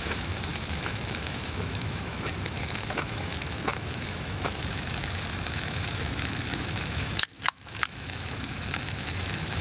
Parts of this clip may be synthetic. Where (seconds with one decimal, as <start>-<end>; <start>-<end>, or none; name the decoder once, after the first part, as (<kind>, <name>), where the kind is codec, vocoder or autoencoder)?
0.0-9.6 (autoencoder, DAC-VAE)